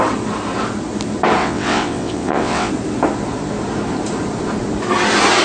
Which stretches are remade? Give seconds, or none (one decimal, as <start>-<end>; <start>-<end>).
1.4-2.7